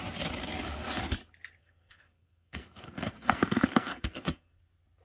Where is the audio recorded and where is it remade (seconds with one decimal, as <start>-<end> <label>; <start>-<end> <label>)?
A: 0.0-1.6 recorded; 1.6-4.6 remade; 4.6-5.0 recorded